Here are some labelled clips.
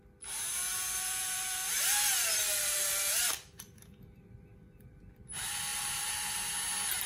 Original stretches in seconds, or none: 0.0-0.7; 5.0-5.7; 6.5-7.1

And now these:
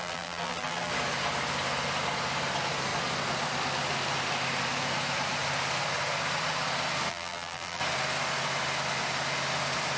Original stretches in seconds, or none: 0.9-7.1; 7.8-10.0

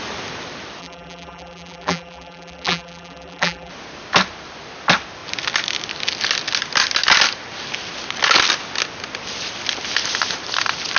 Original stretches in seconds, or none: 0.0-0.8; 3.7-11.0

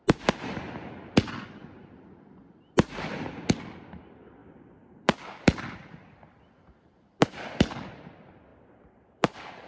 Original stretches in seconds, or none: 0.0-4.4; 7.6-8.5